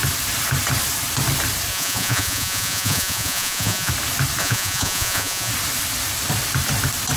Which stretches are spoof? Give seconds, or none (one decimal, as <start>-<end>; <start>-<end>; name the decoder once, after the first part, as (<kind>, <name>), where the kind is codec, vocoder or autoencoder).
1.7-3.9 (vocoder, Vocos); 4.4-5.5